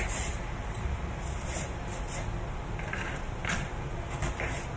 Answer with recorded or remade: recorded